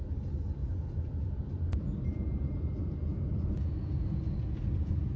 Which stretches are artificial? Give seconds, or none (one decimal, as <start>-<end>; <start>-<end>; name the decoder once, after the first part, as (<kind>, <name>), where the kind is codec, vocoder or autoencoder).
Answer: 0.6-1.4 (vocoder, Vocos); 2.1-5.2